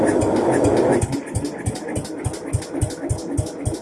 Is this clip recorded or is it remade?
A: recorded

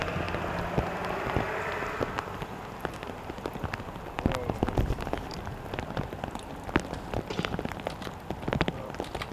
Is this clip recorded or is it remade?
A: recorded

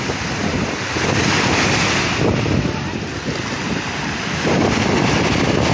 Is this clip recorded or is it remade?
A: recorded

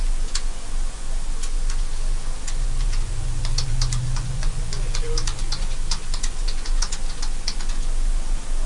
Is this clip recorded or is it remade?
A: remade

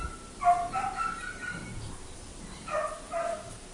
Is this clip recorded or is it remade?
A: recorded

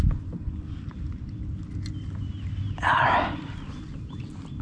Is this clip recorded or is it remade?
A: recorded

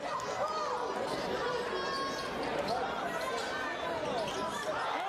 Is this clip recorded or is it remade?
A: recorded